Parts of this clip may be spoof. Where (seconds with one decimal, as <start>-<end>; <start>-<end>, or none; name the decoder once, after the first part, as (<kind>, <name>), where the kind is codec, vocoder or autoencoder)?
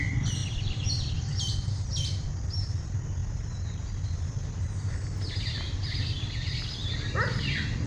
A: 0.4-2.3 (vocoder, BigVGAN v2)